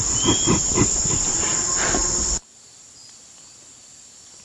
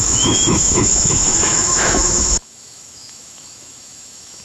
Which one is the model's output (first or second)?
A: second